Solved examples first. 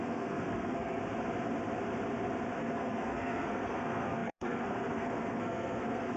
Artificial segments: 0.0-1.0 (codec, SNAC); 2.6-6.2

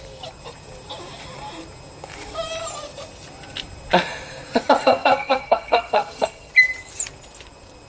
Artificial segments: 4.8-6.5 (codec, SNAC)

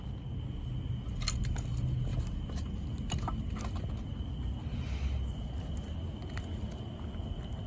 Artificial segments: none